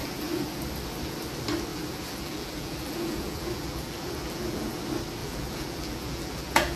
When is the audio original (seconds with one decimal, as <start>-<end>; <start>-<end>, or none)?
0.6-1.7; 4.8-5.2